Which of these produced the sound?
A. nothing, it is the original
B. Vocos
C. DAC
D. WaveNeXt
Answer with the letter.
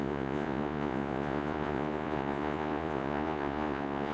B